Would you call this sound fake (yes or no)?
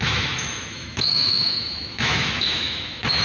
yes